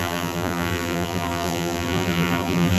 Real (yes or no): no